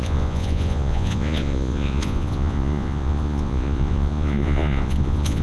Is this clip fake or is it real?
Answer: fake